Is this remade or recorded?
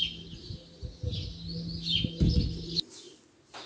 recorded